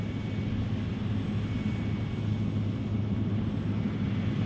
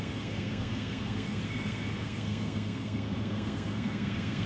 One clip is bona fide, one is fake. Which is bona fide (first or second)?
first